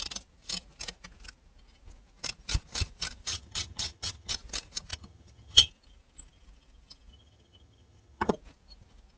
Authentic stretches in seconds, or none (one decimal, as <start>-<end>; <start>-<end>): 0.0-3.3; 4.3-4.9; 5.7-7.1; 8.3-9.2